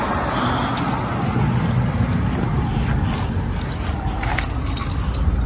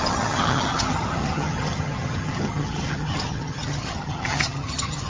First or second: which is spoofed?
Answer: second